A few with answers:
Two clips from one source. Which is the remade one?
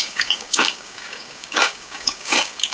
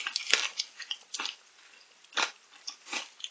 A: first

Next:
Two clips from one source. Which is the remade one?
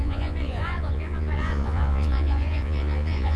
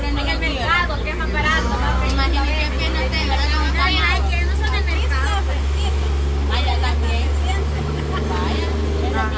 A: first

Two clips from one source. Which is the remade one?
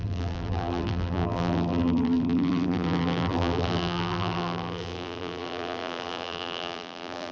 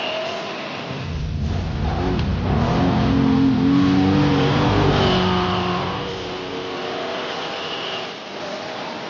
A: first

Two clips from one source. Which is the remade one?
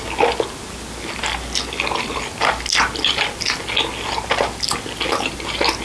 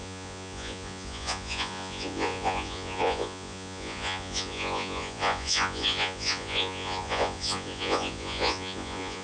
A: second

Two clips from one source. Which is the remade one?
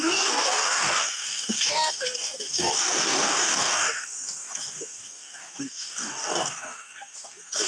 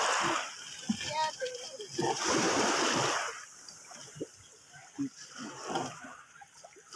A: first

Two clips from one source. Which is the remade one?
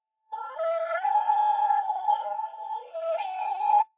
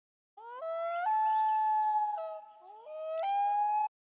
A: first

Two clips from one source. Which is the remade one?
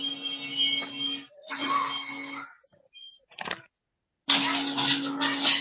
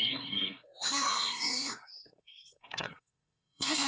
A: second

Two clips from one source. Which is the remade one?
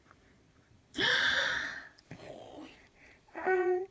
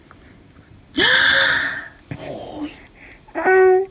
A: first